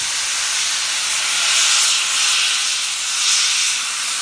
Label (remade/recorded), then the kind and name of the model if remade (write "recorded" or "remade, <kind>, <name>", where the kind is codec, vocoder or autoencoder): recorded